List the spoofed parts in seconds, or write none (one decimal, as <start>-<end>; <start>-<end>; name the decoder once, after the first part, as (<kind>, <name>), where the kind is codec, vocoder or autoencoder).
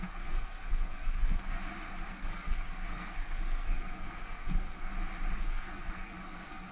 0.0-1.6 (codec, SNAC); 2.1-4.9; 5.4-6.7